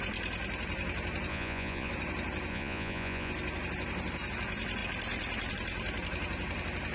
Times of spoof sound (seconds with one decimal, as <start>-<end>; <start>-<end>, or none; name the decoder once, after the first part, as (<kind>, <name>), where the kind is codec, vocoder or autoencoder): 1.3-1.9 (vocoder, Vocos); 2.5-3.3